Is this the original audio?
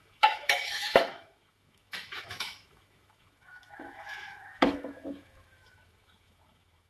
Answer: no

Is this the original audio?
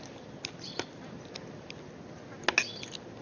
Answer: yes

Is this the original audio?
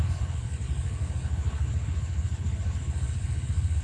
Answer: no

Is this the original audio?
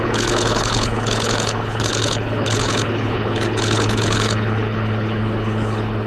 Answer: no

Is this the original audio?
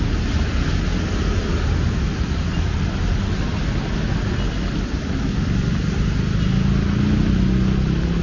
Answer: yes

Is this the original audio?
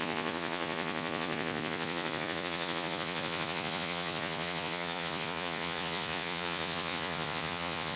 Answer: no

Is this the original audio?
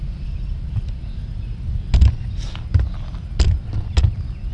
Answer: yes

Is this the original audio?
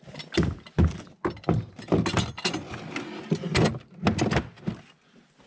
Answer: yes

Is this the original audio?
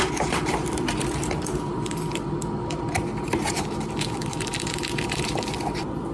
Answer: no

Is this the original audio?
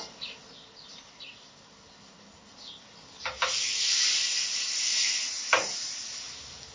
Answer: yes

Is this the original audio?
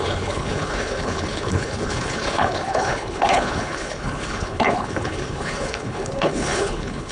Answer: no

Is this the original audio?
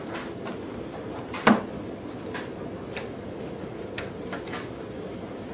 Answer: yes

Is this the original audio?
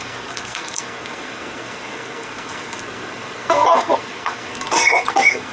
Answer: no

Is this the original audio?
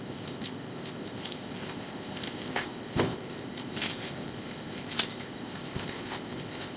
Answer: no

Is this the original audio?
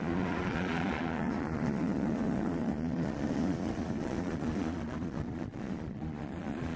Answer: no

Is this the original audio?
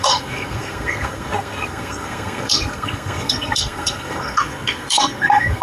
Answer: no